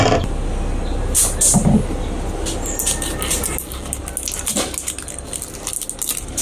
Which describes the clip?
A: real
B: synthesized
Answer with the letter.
A